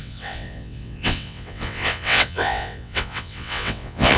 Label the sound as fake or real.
fake